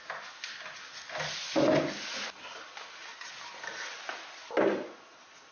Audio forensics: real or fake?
real